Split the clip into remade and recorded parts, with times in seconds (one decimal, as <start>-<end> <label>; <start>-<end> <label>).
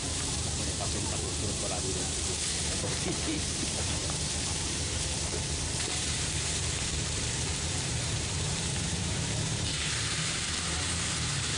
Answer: 0.0-11.6 remade